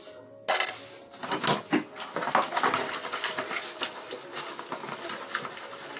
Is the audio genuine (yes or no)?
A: yes